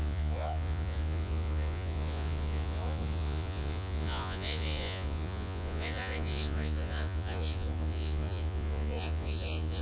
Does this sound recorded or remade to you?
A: remade